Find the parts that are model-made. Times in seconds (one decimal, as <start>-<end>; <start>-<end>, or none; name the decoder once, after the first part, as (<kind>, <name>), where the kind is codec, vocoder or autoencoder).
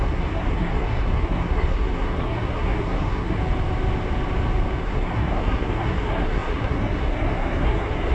0.0-3.4 (codec, SNAC); 4.8-8.1